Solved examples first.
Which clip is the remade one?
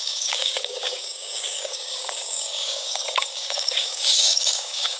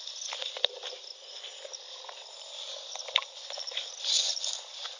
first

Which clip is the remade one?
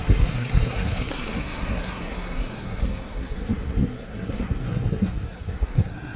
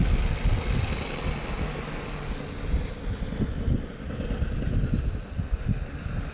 first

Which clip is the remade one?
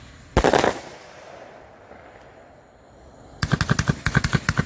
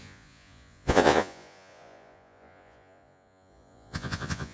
second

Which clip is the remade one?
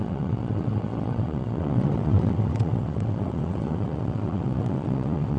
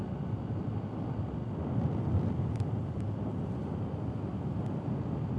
first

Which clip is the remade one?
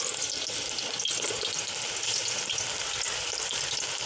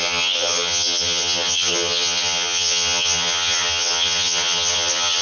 second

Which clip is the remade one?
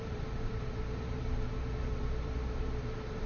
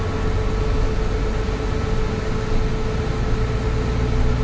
first